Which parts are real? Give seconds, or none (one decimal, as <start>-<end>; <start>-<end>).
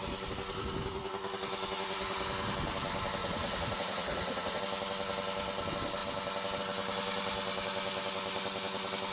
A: 0.0-3.2; 4.6-9.1